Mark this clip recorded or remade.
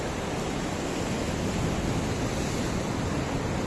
recorded